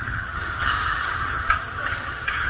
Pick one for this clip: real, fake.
fake